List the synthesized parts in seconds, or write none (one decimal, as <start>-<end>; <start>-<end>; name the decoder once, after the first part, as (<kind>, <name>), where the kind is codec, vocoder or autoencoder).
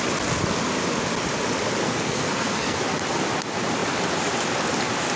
1.8-2.8 (codec, SNAC)